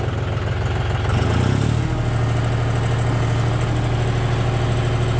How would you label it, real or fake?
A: real